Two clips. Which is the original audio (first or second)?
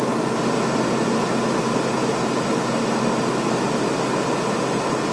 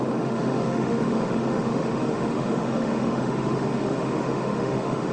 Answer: first